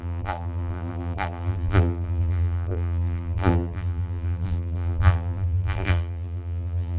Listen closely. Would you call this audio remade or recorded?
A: remade